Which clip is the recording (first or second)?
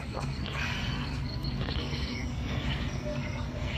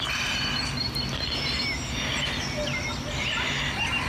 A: second